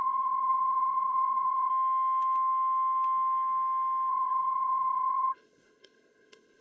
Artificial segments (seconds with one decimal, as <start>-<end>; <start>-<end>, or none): 0.0-1.7; 4.1-6.6